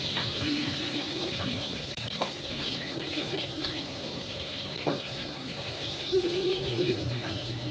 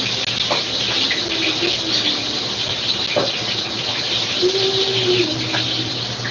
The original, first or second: second